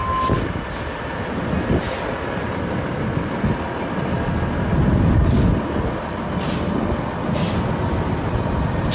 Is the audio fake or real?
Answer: real